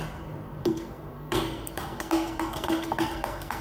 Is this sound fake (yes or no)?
yes